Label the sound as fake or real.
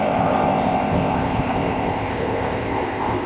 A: fake